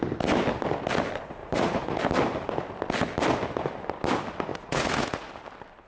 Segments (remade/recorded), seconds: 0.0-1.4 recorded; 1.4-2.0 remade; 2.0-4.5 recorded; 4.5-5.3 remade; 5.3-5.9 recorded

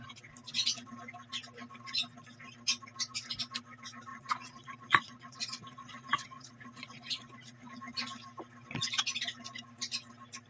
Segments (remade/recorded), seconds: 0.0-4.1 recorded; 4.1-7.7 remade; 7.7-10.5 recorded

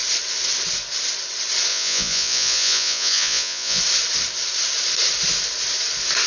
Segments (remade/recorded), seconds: 0.0-1.7 recorded; 1.7-3.8 remade; 3.8-6.3 recorded

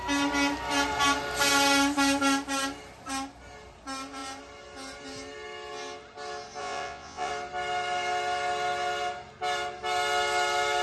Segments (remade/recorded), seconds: 0.0-6.6 recorded; 6.6-7.3 remade; 7.3-10.8 recorded

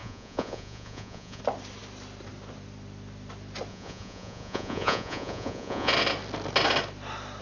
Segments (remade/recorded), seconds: 0.0-1.4 remade; 1.4-3.7 recorded; 3.7-5.9 remade; 5.9-7.4 recorded